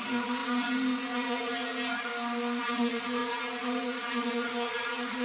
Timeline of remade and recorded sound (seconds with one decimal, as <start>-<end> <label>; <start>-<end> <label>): 0.0-2.1 remade; 2.1-2.6 recorded; 2.6-5.2 remade